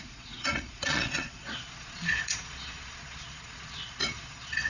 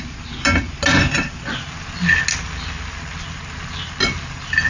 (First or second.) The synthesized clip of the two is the first